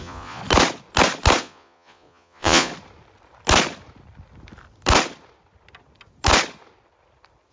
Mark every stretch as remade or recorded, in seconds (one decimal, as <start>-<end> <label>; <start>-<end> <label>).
0.0-0.4 remade; 0.4-1.4 recorded; 1.4-2.7 remade; 2.7-7.5 recorded